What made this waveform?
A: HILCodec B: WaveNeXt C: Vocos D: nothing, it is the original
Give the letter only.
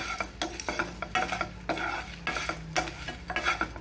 D